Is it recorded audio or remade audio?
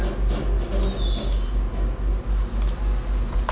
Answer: recorded